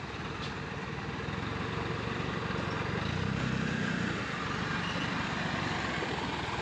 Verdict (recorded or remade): recorded